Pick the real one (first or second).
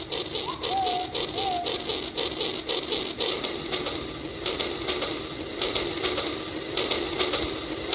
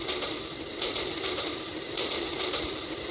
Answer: first